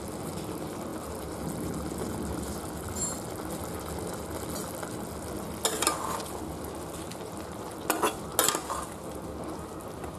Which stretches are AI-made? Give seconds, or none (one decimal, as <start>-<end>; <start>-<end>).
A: none